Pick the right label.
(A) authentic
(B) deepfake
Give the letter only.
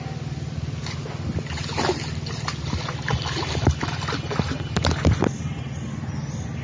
A